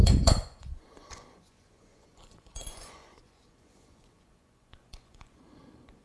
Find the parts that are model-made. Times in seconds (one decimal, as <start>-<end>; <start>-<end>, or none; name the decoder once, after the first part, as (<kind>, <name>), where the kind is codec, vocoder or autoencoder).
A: 0.0-6.0 (vocoder, Vocos)